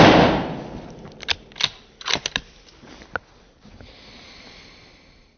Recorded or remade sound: recorded